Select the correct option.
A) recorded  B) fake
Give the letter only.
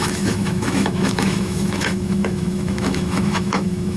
B